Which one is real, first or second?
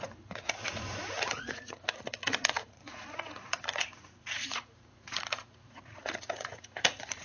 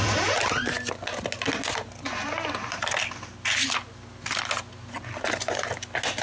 second